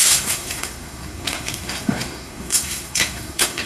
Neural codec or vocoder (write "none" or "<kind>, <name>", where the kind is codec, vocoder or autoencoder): codec, SNAC